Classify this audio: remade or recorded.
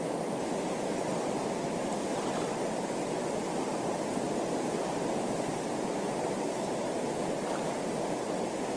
recorded